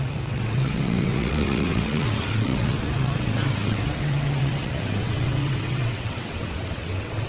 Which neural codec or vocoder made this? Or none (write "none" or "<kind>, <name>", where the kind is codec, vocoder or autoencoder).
vocoder, WaveNeXt